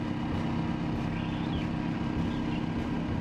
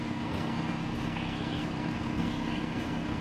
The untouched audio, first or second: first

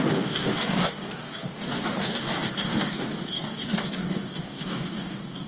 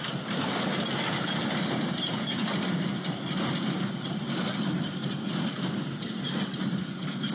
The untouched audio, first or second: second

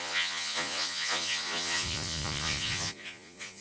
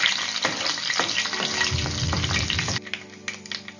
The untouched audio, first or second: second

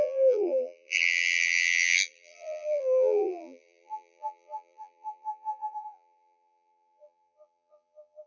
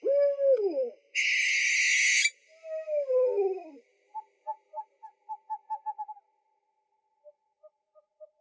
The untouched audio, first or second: second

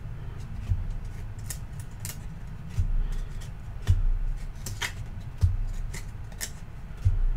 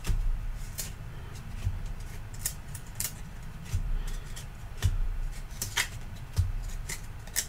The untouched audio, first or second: first